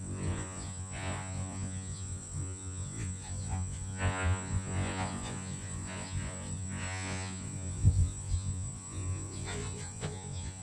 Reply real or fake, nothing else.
fake